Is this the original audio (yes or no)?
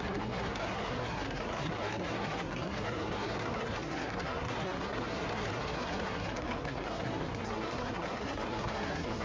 no